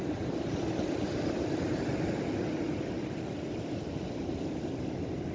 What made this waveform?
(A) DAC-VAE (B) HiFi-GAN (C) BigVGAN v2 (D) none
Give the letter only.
D